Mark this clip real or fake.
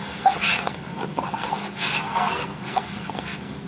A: fake